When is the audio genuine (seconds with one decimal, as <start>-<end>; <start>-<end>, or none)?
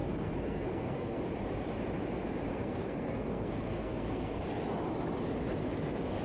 1.2-2.5; 4.4-6.2